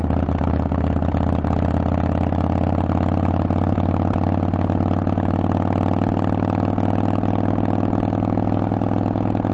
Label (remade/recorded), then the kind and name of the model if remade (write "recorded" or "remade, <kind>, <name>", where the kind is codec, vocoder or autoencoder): recorded